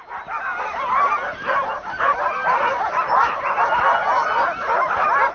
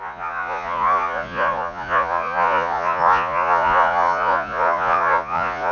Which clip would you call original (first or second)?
first